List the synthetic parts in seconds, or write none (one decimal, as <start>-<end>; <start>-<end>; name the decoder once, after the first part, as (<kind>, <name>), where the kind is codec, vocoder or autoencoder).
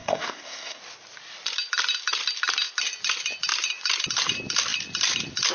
0.0-0.8 (codec, SNAC)